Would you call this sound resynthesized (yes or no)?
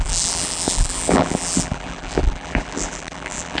yes